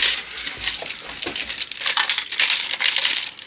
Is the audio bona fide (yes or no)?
yes